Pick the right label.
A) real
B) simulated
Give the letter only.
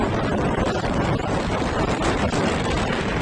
A